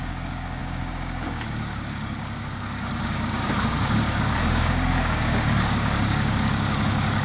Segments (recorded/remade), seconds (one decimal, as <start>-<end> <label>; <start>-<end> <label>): 0.0-7.2 remade